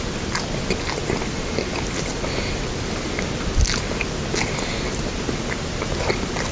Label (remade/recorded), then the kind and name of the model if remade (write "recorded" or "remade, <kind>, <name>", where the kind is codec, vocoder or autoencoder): recorded